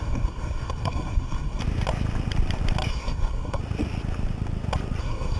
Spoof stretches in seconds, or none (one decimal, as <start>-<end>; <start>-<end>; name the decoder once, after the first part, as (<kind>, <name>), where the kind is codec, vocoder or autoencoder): 0.0-1.6 (codec, SNAC); 2.9-3.6; 5.0-5.4